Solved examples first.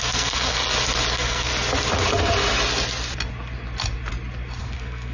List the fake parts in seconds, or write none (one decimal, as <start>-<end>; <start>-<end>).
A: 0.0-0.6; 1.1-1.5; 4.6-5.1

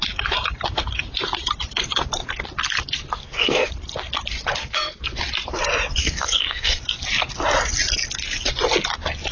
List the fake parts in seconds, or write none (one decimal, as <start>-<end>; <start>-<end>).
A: 3.2-3.7; 4.6-5.2; 6.0-6.8

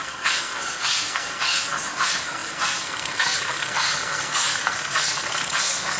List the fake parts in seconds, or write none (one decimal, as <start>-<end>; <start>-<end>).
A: 0.0-6.0

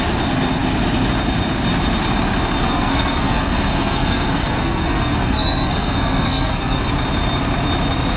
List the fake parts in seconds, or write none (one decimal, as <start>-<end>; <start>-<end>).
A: 2.6-6.9